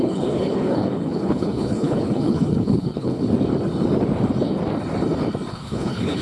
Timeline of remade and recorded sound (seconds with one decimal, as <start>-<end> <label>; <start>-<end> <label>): 0.0-3.2 remade; 3.2-5.5 recorded; 5.5-6.2 remade